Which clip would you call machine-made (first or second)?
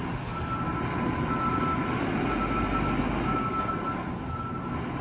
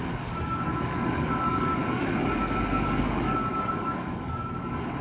second